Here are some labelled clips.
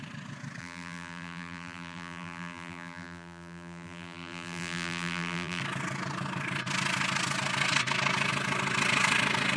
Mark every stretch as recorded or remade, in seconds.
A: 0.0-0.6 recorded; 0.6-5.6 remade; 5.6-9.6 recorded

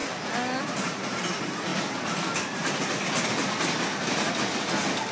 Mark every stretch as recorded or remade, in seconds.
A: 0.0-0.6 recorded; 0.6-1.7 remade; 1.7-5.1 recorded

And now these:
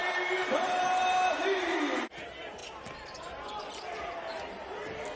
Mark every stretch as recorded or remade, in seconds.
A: 0.0-2.2 remade; 2.2-5.2 recorded

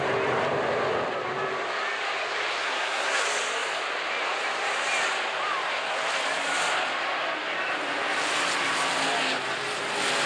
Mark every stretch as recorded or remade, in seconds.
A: 0.0-2.6 recorded; 2.6-3.2 remade; 3.2-10.3 recorded

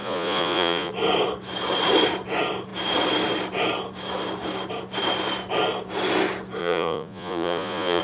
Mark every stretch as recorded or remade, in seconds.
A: 0.0-0.9 remade; 0.9-6.6 recorded; 6.6-8.0 remade